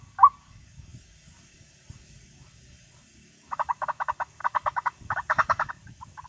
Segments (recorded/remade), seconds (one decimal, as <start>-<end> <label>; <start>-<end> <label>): 0.0-6.3 remade